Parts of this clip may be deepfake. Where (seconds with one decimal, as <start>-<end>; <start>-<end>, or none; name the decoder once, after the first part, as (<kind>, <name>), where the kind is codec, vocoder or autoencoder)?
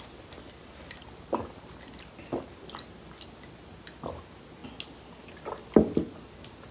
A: none